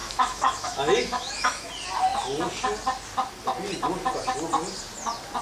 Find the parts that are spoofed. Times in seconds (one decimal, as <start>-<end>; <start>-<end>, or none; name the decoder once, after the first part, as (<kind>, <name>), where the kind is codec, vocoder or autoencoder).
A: 0.0-1.7 (autoencoder, DAC-VAE)